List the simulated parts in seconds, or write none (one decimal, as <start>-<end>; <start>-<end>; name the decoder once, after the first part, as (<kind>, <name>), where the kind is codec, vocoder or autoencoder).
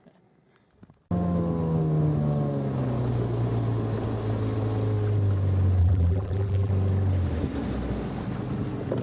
5.8-6.7 (vocoder, BigVGAN v2)